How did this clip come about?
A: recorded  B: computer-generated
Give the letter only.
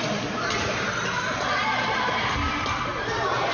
B